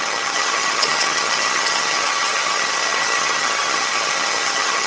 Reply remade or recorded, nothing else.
remade